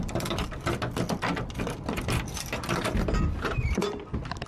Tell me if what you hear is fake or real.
real